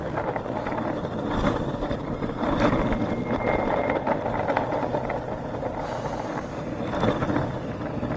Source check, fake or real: real